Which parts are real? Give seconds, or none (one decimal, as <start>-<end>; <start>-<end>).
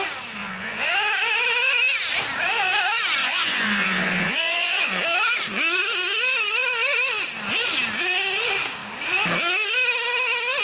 0.0-0.4; 0.9-3.2; 4.9-10.6